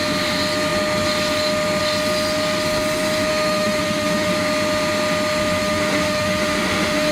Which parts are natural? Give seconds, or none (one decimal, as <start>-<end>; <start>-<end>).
0.0-3.3; 4.3-5.6